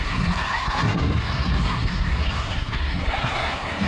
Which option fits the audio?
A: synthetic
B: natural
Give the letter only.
A